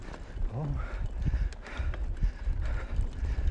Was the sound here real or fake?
real